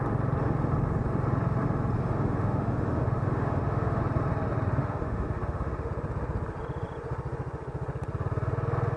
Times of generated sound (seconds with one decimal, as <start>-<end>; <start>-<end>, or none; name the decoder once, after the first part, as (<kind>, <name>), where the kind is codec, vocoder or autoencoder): 2.0-4.0 (autoencoder, DAC-VAE); 4.8-5.9